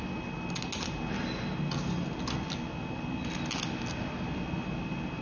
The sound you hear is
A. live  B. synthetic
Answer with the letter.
A